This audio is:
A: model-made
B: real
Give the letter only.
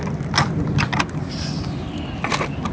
B